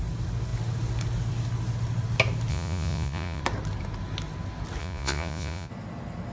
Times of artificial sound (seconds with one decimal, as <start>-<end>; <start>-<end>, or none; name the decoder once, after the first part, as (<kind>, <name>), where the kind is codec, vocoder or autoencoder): 2.5-3.4 (vocoder, Vocos); 4.8-5.7